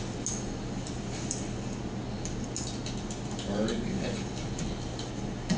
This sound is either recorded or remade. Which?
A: recorded